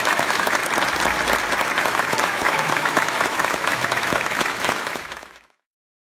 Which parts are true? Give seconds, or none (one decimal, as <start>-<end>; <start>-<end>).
0.6-1.8